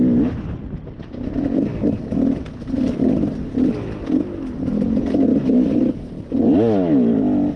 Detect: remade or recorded recorded